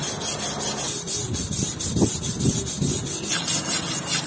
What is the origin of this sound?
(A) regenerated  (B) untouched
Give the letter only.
B